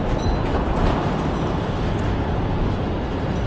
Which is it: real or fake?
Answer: real